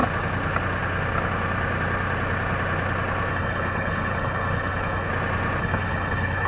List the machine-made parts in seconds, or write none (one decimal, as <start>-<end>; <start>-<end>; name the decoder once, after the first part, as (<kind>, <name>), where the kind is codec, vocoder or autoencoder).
3.3-5.1 (codec, HILCodec); 5.6-6.5